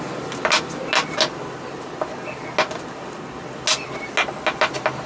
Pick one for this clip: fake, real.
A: real